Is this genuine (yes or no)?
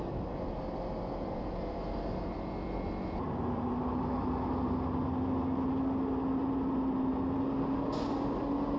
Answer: yes